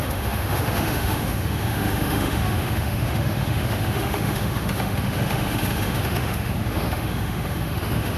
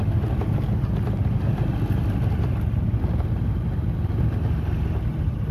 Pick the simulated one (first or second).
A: first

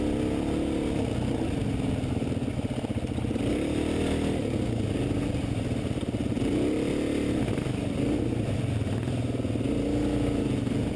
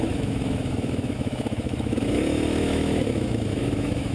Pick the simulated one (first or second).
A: second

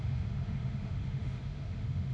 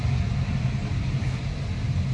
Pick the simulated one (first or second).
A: first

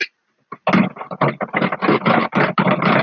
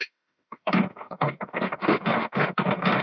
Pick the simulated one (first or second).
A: second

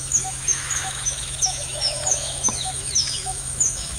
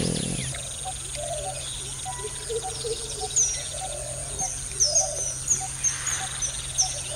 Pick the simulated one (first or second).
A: first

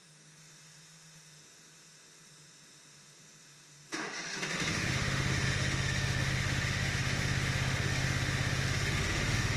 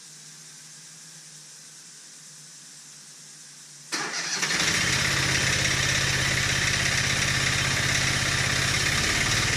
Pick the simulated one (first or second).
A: first